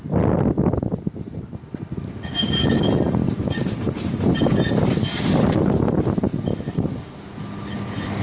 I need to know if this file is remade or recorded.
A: recorded